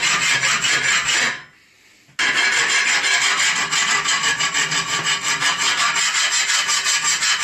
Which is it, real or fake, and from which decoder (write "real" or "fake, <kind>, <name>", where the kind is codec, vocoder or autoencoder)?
real